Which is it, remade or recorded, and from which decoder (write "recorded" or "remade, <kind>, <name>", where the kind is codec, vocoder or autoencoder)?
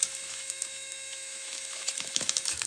remade, autoencoder, DAC-VAE